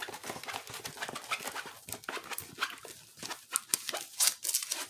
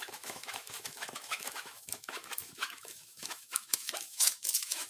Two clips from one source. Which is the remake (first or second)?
second